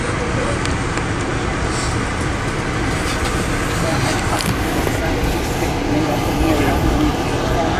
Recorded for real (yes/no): yes